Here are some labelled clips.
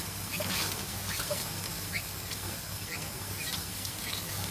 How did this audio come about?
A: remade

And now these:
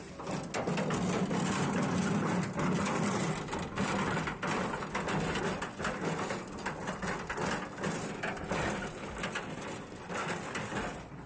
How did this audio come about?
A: recorded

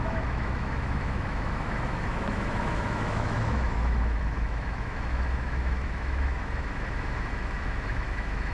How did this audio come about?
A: remade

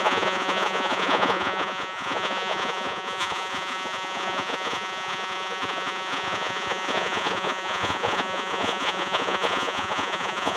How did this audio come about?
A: remade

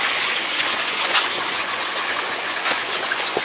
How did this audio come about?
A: remade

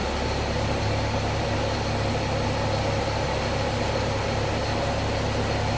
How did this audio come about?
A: recorded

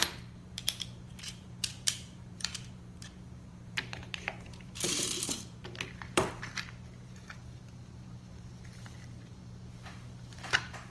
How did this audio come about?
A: remade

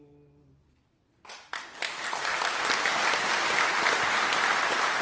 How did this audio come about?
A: recorded